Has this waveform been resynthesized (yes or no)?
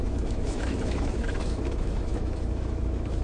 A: yes